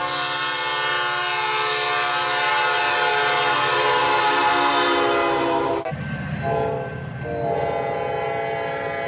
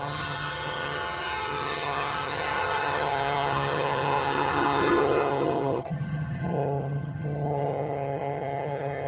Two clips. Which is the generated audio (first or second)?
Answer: second